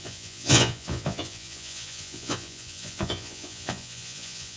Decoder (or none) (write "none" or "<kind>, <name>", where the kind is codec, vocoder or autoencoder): vocoder, Vocos